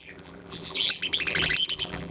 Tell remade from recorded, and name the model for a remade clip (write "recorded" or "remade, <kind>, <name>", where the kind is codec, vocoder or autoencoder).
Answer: remade, vocoder, BigVGAN v2